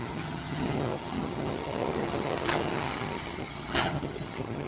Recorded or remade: remade